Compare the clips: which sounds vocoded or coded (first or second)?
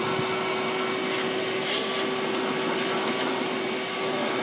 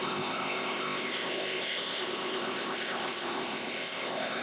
second